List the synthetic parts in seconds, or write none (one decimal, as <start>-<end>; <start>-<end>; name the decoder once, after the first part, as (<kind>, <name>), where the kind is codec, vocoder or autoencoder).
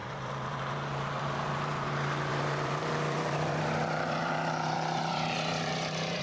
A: 0.0-1.9 (vocoder, BigVGAN v2); 2.3-6.2